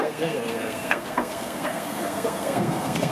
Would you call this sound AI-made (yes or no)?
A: yes